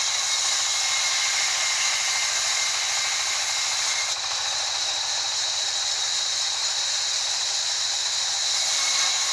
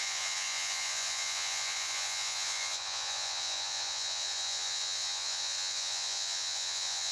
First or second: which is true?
first